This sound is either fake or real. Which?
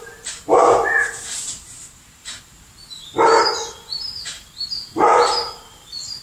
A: fake